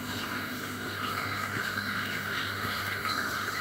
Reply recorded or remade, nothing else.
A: remade